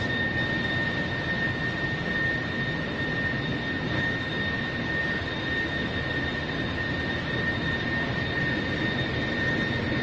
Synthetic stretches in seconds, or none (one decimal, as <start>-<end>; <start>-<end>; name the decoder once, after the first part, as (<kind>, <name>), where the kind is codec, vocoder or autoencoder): none